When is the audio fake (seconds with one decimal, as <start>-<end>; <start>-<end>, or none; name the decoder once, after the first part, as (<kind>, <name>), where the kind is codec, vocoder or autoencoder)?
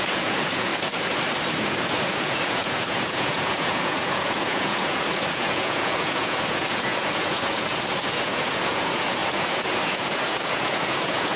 0.0-0.7 (vocoder, Vocos); 1.6-11.4